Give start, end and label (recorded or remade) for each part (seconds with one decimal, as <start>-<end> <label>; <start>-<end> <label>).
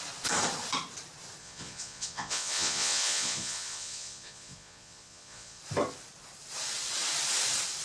0.0-1.4 recorded; 1.4-5.6 remade; 5.6-7.8 recorded